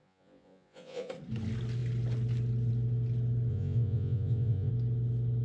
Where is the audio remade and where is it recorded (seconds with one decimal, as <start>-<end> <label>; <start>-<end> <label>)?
0.0-1.1 remade; 1.1-3.5 recorded; 3.5-4.7 remade; 4.7-5.4 recorded

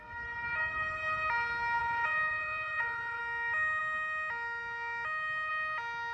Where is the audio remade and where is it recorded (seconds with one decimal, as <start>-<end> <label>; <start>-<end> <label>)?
0.0-1.8 recorded; 1.8-3.2 remade; 3.2-6.1 recorded

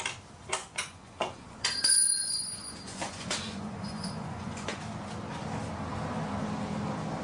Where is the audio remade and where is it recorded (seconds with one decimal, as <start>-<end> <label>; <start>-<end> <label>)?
0.0-0.6 recorded; 0.6-4.8 remade; 4.8-7.2 recorded

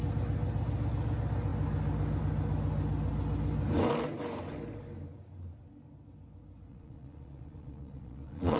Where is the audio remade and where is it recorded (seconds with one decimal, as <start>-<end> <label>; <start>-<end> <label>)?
0.0-6.7 recorded; 6.7-8.6 remade

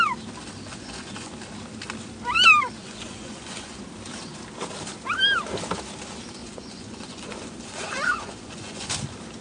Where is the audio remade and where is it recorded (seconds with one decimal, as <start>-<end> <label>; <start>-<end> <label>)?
0.0-0.7 recorded; 0.7-1.3 remade; 1.3-2.8 recorded; 2.8-3.8 remade; 3.8-6.4 recorded; 6.4-8.9 remade; 8.9-9.4 recorded

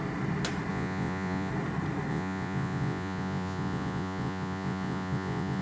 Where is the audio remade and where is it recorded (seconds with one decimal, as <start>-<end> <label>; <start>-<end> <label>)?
0.0-0.7 recorded; 0.7-1.5 remade; 1.5-2.1 recorded; 2.1-5.6 remade

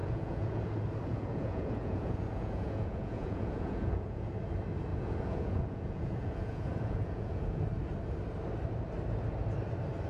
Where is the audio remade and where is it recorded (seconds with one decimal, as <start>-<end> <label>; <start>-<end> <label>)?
0.0-0.6 remade; 0.6-1.1 recorded; 1.1-4.3 remade; 4.3-4.9 recorded; 4.9-7.6 remade; 7.6-10.1 recorded

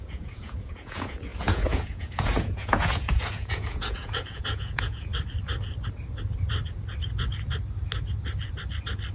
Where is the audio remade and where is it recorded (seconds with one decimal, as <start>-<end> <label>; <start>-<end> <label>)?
0.0-5.1 remade; 5.1-9.1 recorded